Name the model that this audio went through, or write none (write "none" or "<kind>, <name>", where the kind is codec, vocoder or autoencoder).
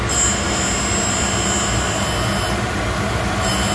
none